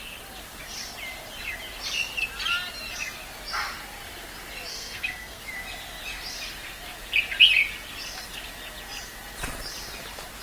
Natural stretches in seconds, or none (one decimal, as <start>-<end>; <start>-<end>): 0.0-4.7; 5.4-10.4